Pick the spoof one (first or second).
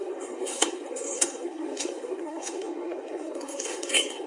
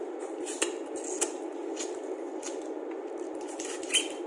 first